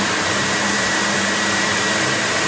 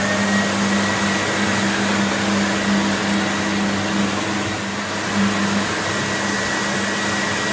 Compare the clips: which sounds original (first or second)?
second